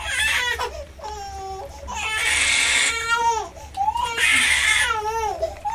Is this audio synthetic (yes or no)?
no